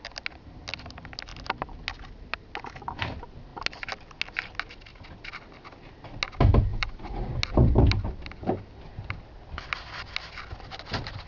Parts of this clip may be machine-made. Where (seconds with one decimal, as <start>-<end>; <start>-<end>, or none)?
6.7-7.3